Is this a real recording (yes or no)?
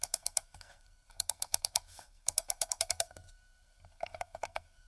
no